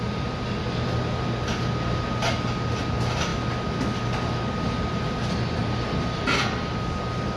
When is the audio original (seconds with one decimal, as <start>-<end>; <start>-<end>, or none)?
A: 0.0-5.6; 6.8-7.4